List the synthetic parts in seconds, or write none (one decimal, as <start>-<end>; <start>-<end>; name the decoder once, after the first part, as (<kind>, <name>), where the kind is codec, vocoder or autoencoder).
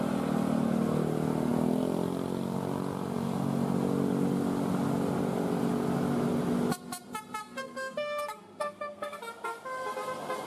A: 7.4-9.2 (codec, SNAC)